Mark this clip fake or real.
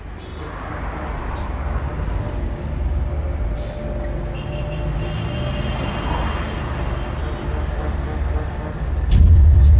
real